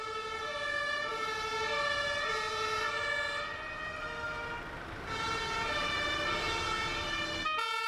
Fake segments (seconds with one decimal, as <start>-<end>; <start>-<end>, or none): none